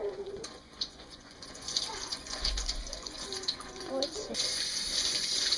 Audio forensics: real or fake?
fake